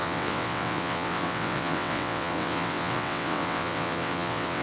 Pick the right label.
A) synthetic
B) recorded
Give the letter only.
A